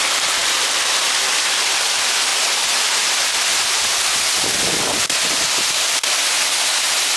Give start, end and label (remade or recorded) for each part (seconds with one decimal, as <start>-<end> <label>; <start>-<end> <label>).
0.0-7.2 recorded